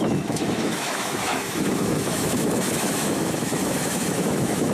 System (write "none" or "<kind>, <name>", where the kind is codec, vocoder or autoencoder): autoencoder, DAC-VAE